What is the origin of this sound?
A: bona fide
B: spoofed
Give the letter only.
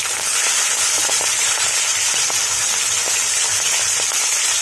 A